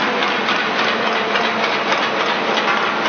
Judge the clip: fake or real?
real